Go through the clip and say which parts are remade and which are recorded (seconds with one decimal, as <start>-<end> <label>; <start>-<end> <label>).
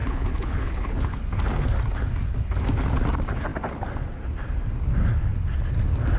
0.0-1.2 remade; 1.2-6.2 recorded